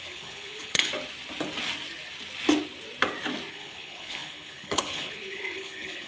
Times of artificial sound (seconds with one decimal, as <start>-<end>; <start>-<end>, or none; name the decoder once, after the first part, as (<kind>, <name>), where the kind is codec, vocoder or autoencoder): 0.0-0.9 (codec, HILCodec); 3.5-6.1